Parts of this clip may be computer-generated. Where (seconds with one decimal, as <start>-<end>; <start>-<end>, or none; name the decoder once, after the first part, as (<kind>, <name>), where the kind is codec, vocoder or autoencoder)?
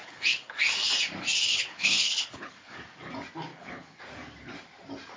0.0-0.6 (codec, HILCodec); 1.5-2.8; 3.5-4.0